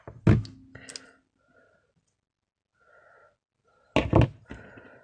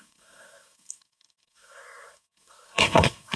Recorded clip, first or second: first